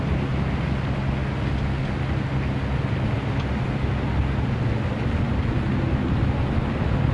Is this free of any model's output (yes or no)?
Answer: yes